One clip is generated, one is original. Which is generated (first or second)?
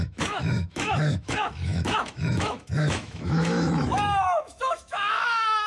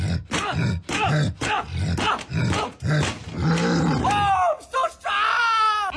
first